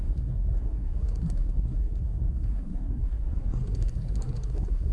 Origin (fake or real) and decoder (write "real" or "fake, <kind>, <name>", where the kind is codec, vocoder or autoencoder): fake, codec, SNAC